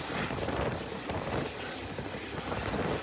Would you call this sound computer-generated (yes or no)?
no